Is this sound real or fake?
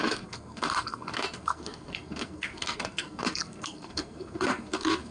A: fake